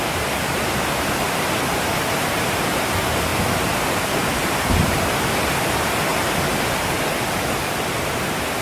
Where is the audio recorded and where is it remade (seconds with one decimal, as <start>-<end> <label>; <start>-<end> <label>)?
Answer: 0.0-3.3 remade; 3.3-4.0 recorded; 4.0-6.1 remade; 6.1-7.2 recorded; 7.2-8.6 remade